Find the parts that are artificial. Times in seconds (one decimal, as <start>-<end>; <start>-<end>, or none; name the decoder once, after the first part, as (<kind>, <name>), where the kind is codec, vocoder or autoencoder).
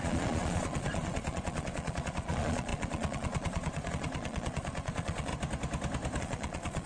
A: 0.0-5.3 (vocoder, Vocos); 6.2-6.9